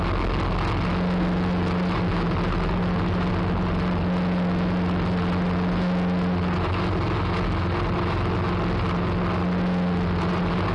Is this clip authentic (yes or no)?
yes